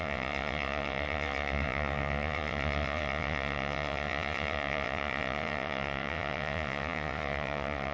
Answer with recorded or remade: remade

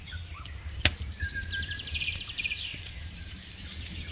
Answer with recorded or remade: remade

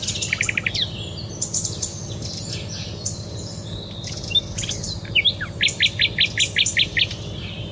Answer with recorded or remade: recorded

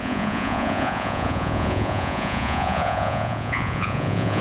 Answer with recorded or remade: remade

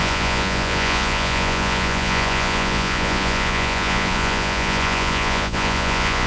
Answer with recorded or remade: remade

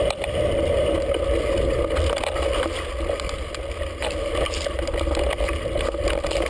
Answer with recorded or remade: recorded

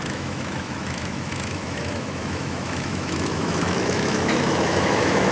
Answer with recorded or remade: remade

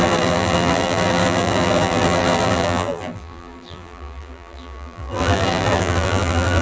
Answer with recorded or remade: remade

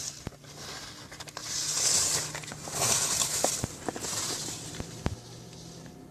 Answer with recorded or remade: recorded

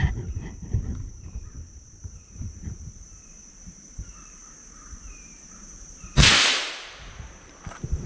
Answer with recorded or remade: remade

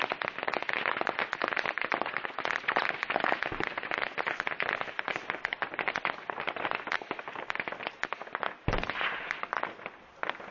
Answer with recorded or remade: recorded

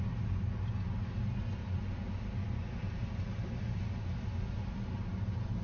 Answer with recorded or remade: recorded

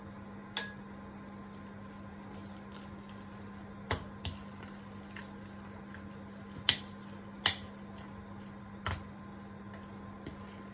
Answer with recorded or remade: recorded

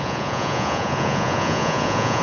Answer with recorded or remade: remade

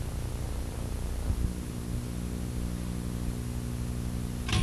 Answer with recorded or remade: recorded